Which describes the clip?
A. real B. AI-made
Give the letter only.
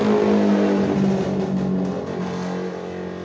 A